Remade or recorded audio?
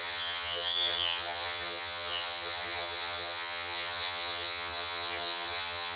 remade